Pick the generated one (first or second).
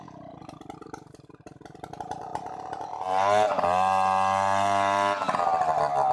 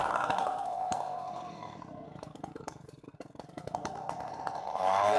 second